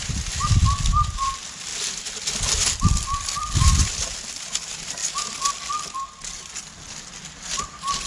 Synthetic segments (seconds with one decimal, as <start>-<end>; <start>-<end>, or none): 0.0-1.7; 2.8-5.0; 6.8-8.1